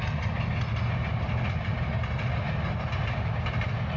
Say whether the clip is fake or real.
fake